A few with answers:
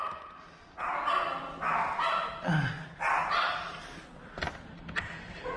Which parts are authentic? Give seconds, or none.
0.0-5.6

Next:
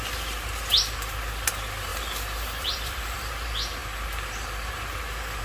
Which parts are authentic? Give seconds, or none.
0.0-1.9; 3.3-5.4

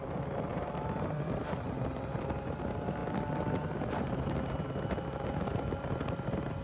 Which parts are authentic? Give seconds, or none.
0.5-1.0

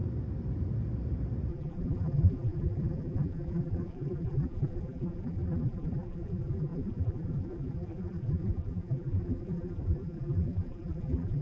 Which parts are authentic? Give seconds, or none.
0.0-1.5

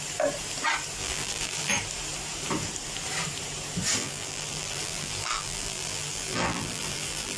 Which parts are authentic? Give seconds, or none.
0.0-1.0; 1.7-4.0

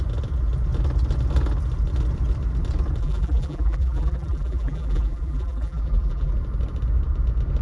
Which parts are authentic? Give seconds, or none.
0.0-3.0; 6.3-7.6

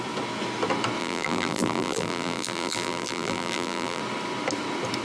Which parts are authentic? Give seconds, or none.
0.0-1.0; 4.0-5.0

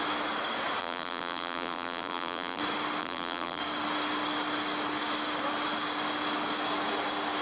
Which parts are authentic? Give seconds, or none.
0.0-0.8; 2.6-3.0; 3.6-7.4